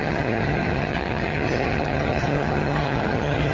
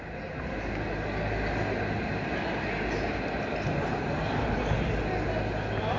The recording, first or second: second